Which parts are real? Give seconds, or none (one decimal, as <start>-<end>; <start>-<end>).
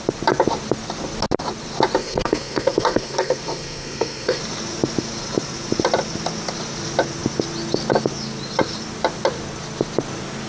0.0-2.0; 4.4-10.5